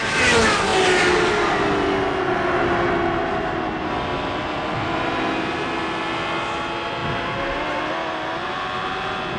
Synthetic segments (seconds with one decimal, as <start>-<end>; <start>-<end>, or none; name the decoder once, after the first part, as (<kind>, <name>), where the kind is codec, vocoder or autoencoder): none